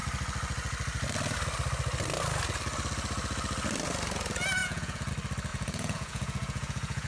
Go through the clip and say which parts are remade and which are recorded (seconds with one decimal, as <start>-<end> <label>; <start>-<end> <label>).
0.0-4.6 recorded; 4.6-5.1 remade; 5.1-5.5 recorded; 5.5-7.1 remade